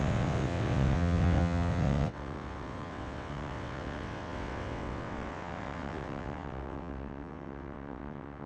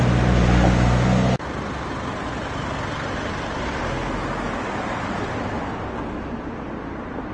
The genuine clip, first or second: second